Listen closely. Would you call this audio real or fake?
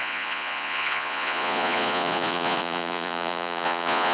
fake